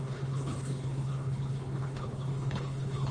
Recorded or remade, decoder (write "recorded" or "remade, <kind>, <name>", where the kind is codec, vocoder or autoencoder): remade, codec, HILCodec